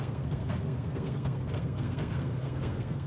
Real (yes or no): no